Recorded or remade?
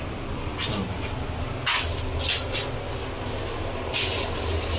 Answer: recorded